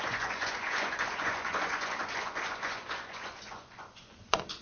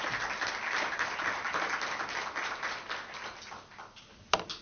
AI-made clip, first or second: first